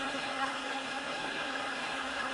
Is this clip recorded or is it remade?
remade